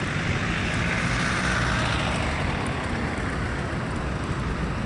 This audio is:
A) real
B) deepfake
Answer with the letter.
A